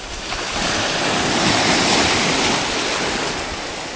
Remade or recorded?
recorded